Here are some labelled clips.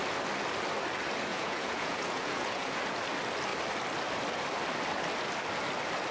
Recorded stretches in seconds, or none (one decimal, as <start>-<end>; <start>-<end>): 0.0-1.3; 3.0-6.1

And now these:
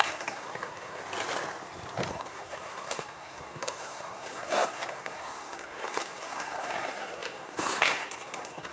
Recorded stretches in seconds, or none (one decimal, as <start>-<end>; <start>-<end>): 1.0-2.1

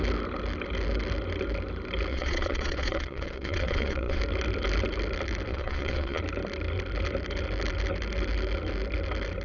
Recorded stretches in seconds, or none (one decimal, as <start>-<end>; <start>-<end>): 0.0-2.1; 4.2-5.5; 6.2-9.4